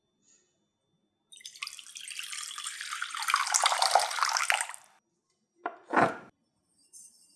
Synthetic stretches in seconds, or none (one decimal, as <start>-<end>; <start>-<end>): 5.2-7.4